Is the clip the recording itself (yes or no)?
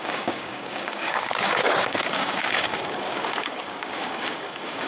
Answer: no